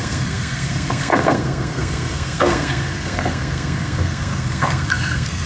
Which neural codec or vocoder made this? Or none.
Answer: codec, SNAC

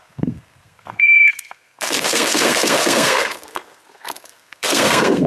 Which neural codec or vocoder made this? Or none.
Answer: codec, SNAC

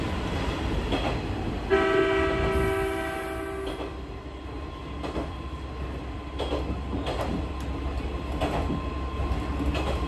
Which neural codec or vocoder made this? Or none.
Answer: none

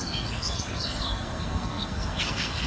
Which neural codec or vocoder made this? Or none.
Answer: codec, SNAC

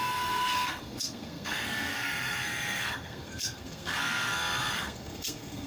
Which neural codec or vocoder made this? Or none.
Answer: codec, SNAC